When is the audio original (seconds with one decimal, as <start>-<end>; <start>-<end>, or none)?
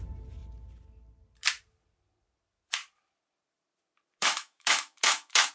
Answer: 0.0-4.2